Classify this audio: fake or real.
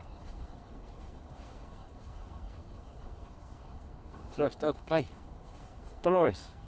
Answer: fake